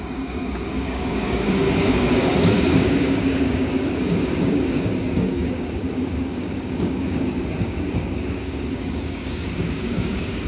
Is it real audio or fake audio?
fake